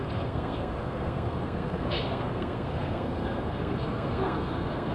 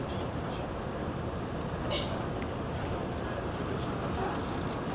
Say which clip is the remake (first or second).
first